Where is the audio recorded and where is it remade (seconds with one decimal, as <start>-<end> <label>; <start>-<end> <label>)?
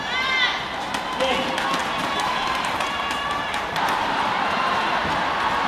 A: 0.0-1.8 recorded; 1.8-5.2 remade; 5.2-5.7 recorded